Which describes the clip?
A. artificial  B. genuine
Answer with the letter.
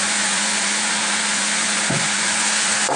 A